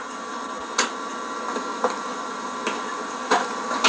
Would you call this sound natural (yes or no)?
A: yes